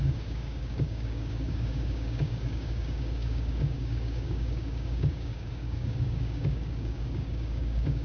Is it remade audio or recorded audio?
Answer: remade